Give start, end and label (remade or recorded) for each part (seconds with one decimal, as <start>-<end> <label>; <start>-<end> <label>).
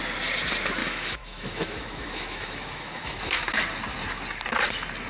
0.0-0.8 recorded; 0.8-3.4 remade; 3.4-5.1 recorded